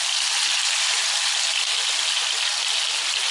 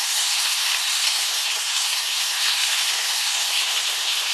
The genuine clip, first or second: first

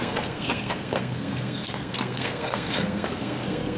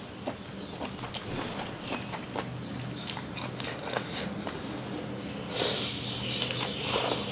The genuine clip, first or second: second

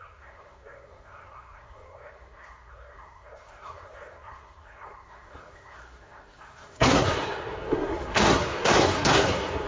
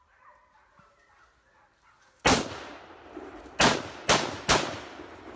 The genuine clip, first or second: second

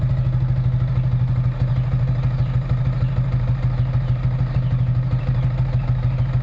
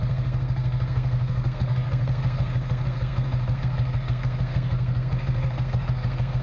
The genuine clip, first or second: first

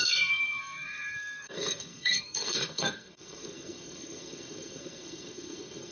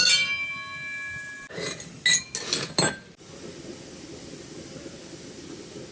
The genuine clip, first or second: second